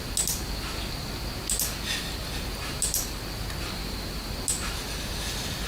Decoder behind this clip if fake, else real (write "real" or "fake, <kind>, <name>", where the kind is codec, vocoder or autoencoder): real